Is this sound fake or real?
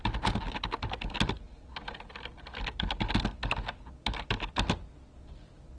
real